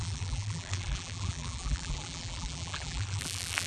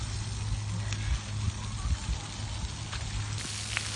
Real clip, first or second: second